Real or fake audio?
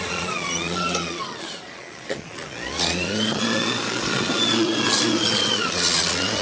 fake